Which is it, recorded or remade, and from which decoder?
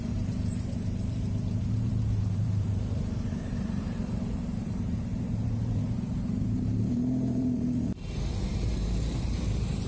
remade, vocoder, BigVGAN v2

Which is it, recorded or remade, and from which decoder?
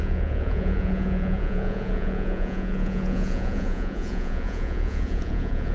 remade, vocoder, Vocos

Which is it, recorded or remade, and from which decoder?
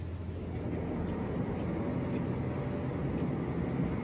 recorded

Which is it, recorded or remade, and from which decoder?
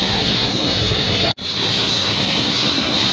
remade, codec, SNAC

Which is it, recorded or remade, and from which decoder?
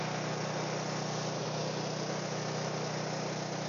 recorded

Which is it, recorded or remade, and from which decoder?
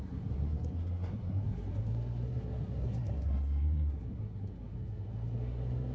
remade, codec, SNAC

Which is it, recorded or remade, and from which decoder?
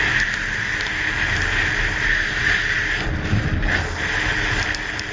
recorded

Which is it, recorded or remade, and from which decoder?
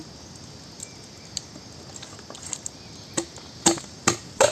recorded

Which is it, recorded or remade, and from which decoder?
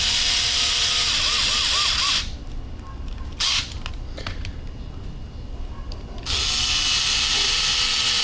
recorded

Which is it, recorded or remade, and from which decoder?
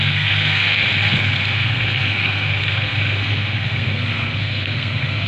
remade, codec, SNAC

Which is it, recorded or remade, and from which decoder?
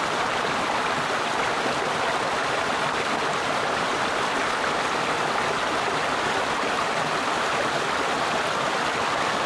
recorded